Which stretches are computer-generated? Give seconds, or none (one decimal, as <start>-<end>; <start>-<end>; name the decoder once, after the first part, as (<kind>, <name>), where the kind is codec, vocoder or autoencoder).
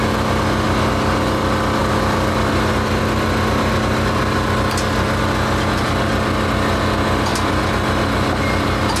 none